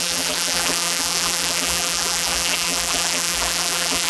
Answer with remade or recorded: remade